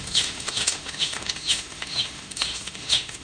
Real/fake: fake